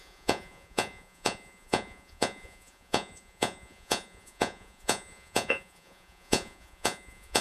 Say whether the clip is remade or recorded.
remade